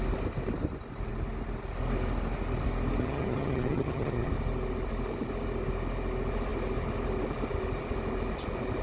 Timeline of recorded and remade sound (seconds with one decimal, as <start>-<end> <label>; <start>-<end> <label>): 0.0-3.0 recorded; 3.0-4.3 remade; 4.3-8.8 recorded

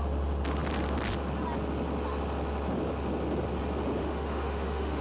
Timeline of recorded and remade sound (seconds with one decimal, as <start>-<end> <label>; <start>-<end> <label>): 0.0-4.0 recorded; 4.0-5.0 remade

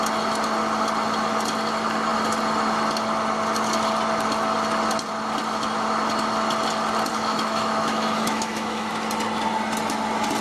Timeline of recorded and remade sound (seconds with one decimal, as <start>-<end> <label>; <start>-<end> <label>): 0.0-7.1 recorded; 7.1-8.9 remade; 8.9-10.4 recorded

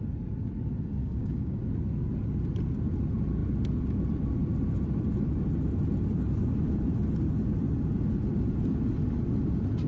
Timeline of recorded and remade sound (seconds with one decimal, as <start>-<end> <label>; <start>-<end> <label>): 0.0-1.0 recorded; 1.0-1.6 remade; 1.6-9.9 recorded

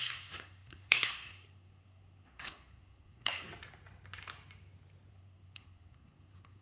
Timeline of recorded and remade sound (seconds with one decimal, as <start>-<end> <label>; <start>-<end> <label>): 0.0-3.5 remade; 3.5-5.1 recorded; 5.1-6.6 remade

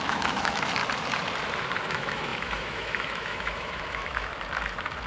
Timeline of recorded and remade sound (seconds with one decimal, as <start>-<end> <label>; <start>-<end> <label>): 0.0-0.8 remade; 0.8-1.9 recorded; 1.9-4.3 remade; 4.3-5.1 recorded

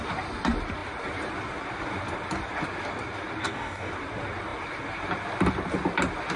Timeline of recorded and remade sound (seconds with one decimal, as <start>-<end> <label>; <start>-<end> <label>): 0.0-3.4 recorded; 3.4-3.9 remade; 3.9-6.4 recorded